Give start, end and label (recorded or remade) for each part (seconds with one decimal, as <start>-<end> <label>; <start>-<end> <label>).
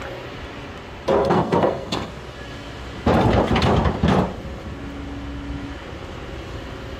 0.0-1.2 recorded; 1.2-2.1 remade; 2.1-7.0 recorded